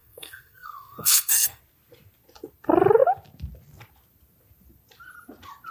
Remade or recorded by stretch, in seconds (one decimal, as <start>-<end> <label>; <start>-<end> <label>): 0.0-1.6 remade; 1.6-5.7 recorded